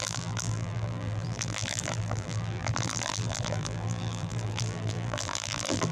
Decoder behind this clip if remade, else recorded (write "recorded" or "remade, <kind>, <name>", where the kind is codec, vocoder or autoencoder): remade, vocoder, BigVGAN v2